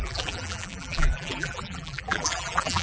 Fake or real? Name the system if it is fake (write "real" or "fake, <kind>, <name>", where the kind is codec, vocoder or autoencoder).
fake, vocoder, BigVGAN v2